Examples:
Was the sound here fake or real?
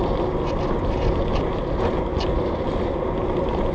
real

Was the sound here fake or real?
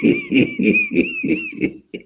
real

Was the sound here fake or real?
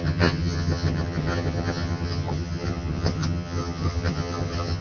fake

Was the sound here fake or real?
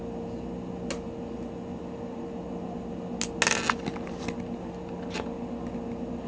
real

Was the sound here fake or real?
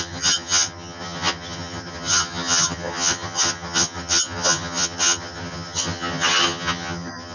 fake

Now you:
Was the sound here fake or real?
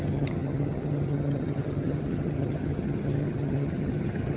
fake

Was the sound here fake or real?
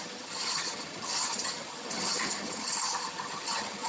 fake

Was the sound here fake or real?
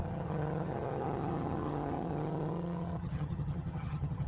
fake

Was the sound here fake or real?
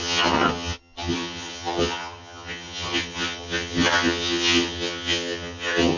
fake